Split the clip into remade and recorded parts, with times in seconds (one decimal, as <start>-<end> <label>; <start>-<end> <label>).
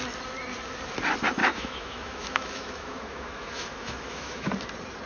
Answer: 0.0-1.4 recorded; 1.4-4.5 remade; 4.5-5.1 recorded